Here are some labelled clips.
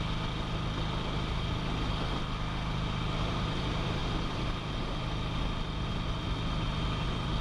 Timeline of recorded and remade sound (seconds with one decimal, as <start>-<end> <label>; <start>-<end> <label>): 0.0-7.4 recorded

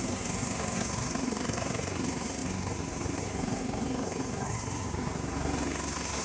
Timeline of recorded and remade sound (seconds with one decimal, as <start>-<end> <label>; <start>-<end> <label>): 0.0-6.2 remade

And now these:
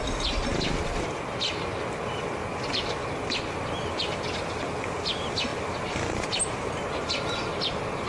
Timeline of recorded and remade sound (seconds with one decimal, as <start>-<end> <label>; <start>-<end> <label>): 0.0-8.1 recorded

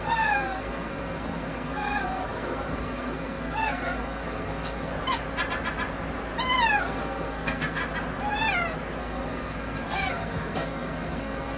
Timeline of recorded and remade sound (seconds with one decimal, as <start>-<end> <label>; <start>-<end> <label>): 0.0-4.9 remade; 4.9-6.8 recorded; 6.8-7.8 remade; 7.8-9.0 recorded; 9.0-11.6 remade